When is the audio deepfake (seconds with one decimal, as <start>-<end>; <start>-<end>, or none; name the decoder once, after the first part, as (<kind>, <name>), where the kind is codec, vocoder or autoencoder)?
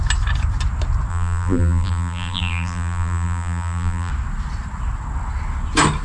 1.1-4.1 (vocoder, BigVGAN v2)